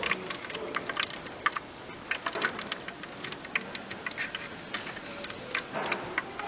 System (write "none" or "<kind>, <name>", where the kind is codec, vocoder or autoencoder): none